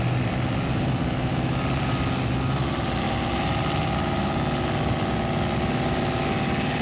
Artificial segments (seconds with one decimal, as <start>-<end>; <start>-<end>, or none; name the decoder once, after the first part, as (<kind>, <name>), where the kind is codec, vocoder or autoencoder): none